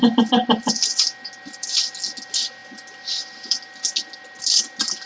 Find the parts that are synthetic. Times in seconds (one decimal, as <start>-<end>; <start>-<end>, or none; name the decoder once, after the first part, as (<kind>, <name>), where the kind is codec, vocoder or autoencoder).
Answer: none